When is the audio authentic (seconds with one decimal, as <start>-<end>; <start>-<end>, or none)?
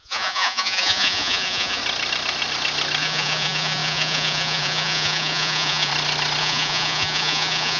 1.8-3.0; 5.9-6.4